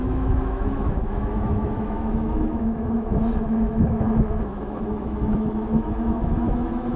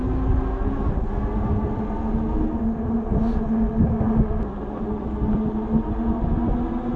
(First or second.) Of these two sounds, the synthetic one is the first